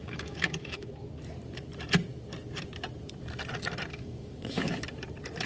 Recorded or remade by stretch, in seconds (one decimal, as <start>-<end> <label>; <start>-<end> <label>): 0.0-0.9 remade; 0.9-3.9 recorded; 3.9-4.8 remade; 4.8-5.5 recorded